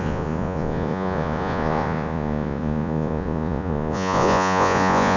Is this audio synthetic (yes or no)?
yes